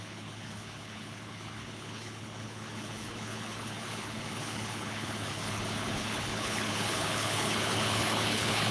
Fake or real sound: fake